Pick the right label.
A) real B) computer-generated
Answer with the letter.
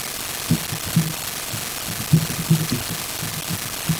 A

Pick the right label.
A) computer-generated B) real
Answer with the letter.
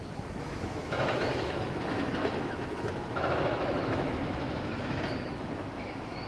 A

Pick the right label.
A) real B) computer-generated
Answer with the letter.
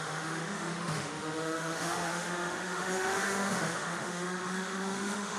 B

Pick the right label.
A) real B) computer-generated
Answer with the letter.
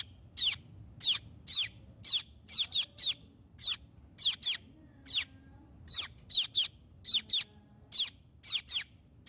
A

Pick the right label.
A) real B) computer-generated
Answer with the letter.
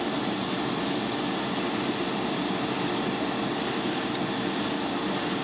A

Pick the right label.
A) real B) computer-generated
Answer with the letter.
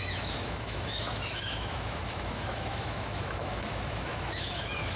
B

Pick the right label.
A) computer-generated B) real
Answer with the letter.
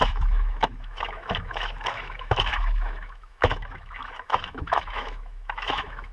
A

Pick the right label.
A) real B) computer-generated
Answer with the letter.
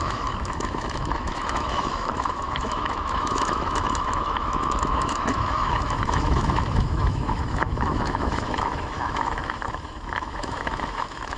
B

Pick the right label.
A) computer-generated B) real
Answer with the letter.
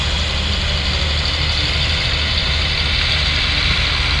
B